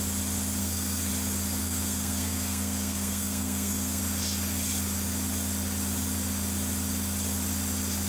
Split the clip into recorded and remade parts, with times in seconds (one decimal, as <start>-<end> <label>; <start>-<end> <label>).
0.0-0.6 recorded; 0.6-1.1 remade; 1.1-1.6 recorded; 1.6-4.0 remade; 4.0-8.1 recorded